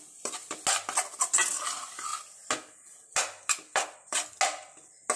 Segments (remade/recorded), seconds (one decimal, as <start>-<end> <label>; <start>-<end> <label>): 0.0-5.2 recorded